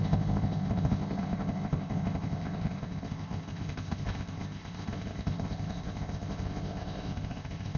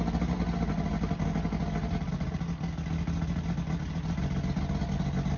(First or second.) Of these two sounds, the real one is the second